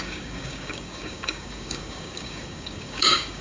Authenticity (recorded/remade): remade